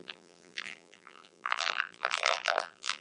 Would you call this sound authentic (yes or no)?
no